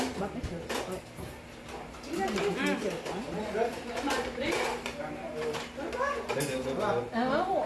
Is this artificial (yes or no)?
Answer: no